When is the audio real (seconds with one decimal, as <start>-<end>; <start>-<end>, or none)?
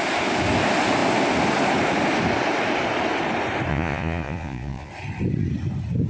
0.0-3.7; 4.9-6.1